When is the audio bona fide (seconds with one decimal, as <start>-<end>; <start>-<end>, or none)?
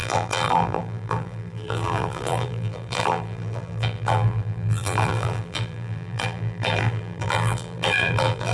none